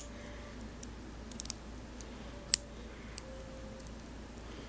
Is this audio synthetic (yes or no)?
no